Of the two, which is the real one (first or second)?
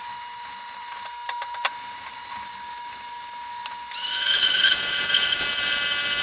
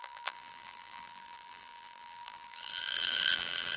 first